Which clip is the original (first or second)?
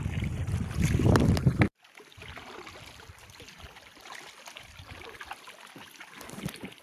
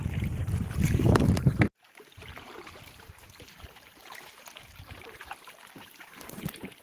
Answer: first